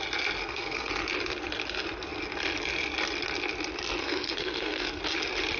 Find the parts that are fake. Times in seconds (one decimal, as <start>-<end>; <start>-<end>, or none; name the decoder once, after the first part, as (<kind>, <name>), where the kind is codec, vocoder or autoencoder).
0.4-0.9 (codec, SNAC); 4.0-5.0